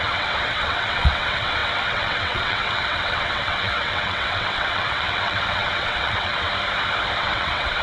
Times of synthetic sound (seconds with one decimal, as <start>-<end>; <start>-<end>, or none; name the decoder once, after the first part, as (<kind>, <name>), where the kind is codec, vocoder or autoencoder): 0.0-6.5 (vocoder, WaveNeXt); 7.2-7.8

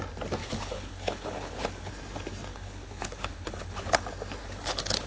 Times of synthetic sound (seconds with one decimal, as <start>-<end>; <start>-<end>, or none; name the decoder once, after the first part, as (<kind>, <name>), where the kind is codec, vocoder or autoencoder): 0.4-1.9 (codec, HILCodec); 2.5-4.0; 4.4-5.1

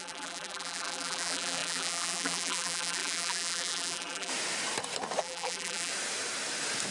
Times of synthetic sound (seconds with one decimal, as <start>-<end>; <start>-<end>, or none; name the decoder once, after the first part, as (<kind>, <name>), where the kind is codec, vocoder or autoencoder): 0.0-4.3 (vocoder, BigVGAN v2); 5.2-5.9

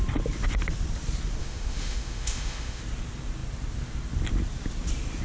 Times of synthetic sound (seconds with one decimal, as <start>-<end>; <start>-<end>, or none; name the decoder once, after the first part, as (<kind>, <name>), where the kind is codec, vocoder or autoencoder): 1.4-2.8 (autoencoder, DAC-VAE)

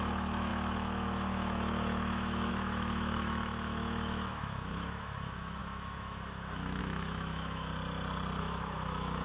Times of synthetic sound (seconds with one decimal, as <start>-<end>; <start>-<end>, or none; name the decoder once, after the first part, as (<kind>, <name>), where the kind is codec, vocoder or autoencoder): 0.0-7.7 (autoencoder, DAC-VAE); 8.4-9.2

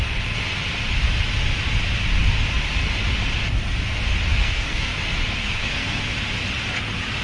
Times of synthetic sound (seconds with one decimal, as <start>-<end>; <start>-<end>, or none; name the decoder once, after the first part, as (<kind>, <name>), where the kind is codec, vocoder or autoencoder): 4.3-5.0 (codec, SNAC); 5.4-6.0

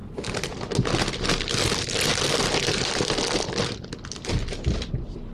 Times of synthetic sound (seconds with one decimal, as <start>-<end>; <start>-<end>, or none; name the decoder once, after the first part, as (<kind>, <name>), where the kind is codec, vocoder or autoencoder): none